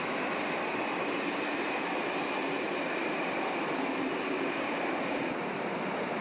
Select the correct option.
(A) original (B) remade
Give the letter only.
A